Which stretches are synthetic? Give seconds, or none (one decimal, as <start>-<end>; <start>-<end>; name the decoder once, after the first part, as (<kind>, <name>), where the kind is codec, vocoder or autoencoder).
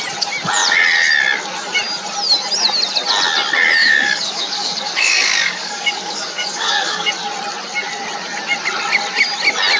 3.8-7.1 (codec, DAC)